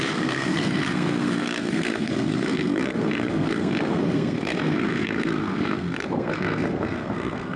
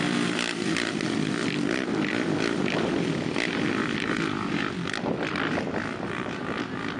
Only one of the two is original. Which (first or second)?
second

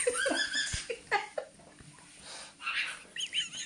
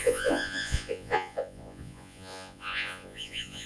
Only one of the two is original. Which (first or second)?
first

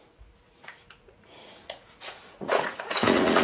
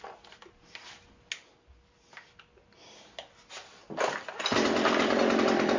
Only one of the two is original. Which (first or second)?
second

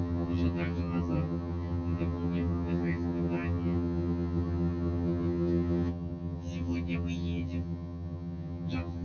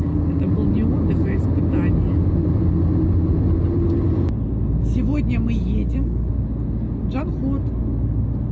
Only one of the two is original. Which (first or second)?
second